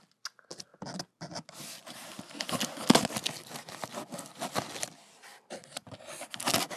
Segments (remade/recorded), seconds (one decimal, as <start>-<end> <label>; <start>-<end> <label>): 0.0-6.8 recorded